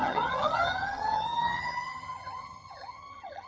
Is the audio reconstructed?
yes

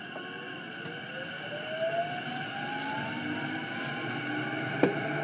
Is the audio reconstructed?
no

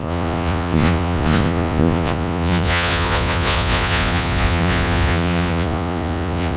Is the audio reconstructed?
yes